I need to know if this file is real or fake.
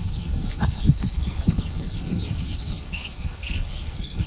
fake